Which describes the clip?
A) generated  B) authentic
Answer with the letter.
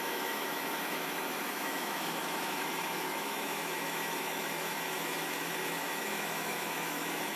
A